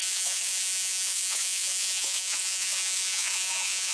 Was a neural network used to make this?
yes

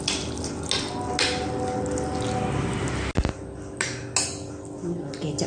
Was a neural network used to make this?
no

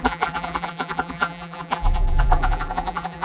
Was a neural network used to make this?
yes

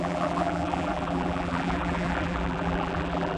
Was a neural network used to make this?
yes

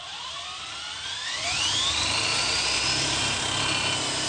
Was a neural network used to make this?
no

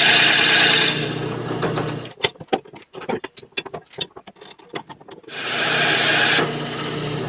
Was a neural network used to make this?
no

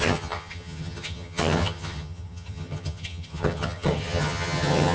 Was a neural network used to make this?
yes